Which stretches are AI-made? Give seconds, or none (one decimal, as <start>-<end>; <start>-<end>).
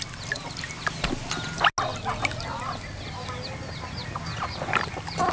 none